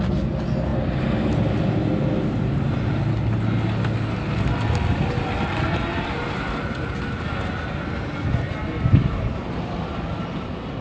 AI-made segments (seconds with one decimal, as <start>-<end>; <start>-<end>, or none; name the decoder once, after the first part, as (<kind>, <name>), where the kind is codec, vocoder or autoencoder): none